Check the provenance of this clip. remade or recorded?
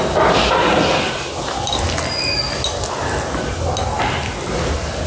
recorded